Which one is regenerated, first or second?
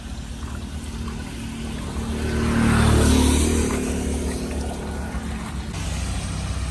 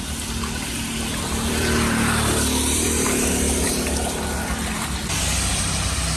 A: second